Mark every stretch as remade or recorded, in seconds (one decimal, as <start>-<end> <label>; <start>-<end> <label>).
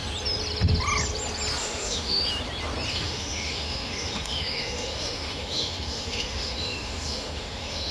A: 0.0-1.6 recorded; 1.6-2.2 remade; 2.2-2.9 recorded; 2.9-7.9 remade